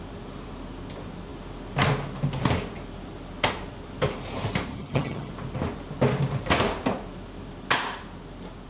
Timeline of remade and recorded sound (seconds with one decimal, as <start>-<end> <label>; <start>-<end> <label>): 0.0-4.7 recorded; 4.7-5.3 remade; 5.3-8.7 recorded